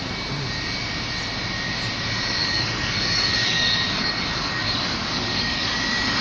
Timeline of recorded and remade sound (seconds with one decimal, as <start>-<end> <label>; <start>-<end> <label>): 0.0-2.4 recorded; 2.4-6.2 remade